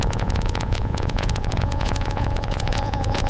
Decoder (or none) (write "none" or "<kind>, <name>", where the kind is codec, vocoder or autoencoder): vocoder, Vocos